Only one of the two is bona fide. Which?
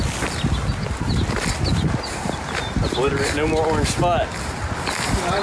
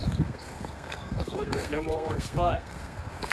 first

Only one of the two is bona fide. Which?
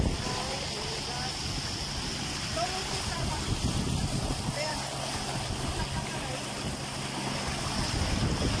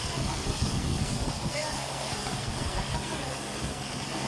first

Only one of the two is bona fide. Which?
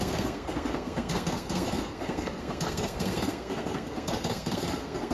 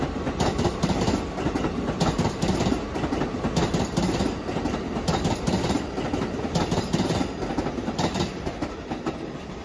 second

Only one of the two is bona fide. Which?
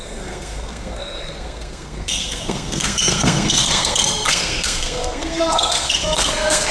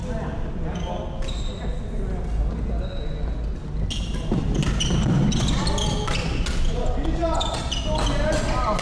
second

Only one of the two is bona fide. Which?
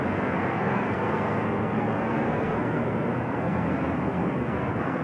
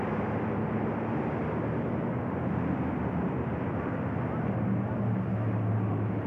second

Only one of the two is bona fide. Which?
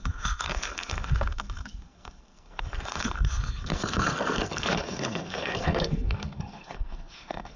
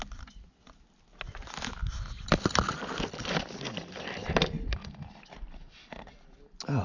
second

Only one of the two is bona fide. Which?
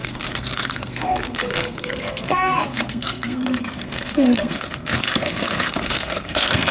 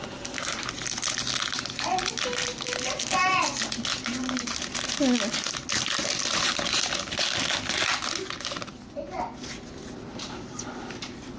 second